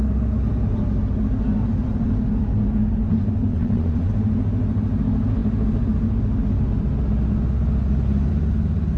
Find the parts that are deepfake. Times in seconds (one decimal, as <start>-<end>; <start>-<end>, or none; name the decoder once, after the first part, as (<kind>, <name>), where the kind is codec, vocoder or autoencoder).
3.5-4.1 (vocoder, Vocos)